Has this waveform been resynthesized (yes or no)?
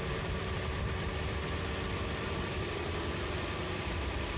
yes